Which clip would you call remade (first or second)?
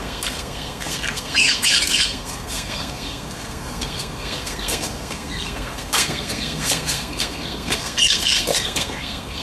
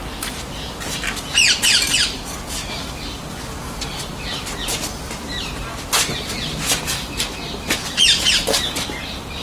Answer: first